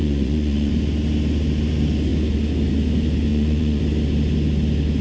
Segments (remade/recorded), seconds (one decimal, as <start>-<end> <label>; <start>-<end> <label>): 0.0-0.7 remade; 0.7-3.3 recorded; 3.3-3.8 remade; 3.8-5.0 recorded